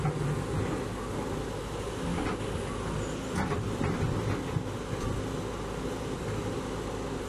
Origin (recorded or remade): recorded